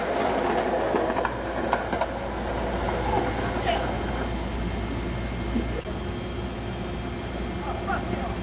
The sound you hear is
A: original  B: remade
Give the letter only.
A